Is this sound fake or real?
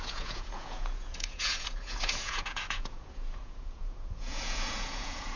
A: fake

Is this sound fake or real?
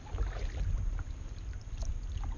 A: real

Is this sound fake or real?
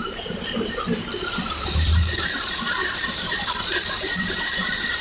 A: fake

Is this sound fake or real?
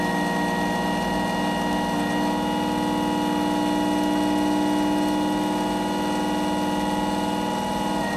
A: real